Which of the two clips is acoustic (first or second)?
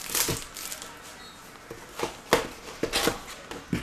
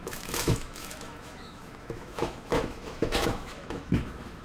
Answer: first